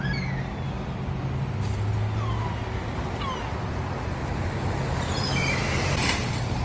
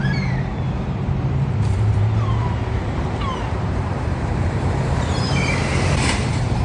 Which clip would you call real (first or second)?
first